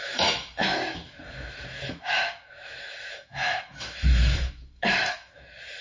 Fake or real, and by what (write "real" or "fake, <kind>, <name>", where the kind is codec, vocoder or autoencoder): fake, autoencoder, DAC-VAE